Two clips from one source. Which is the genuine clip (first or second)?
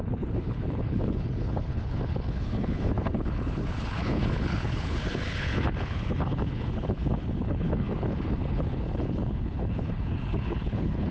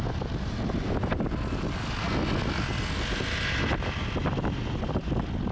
second